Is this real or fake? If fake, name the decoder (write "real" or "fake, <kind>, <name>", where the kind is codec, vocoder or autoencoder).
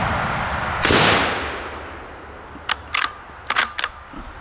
real